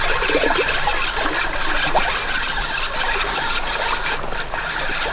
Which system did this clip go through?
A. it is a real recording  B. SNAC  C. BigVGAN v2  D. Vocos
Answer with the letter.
A